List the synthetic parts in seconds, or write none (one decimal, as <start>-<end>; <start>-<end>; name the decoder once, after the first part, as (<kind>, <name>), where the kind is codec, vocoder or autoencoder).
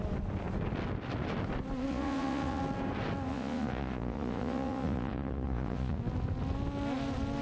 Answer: 1.9-2.6 (vocoder, Vocos); 3.3-6.0